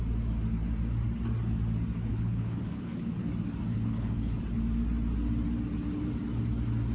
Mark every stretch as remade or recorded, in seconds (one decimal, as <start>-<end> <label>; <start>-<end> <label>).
0.0-2.1 recorded; 2.1-3.3 remade; 3.3-3.7 recorded; 3.7-4.4 remade; 4.4-6.9 recorded